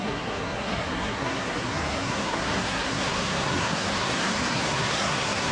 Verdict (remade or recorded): remade